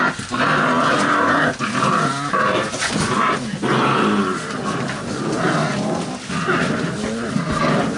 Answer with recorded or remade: recorded